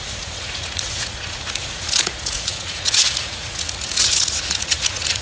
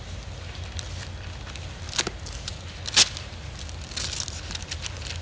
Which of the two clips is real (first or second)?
second